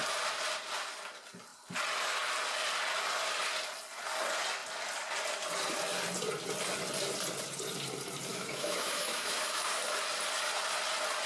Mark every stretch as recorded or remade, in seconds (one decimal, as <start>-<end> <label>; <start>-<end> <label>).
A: 0.0-8.3 recorded; 8.3-9.6 remade; 9.6-11.3 recorded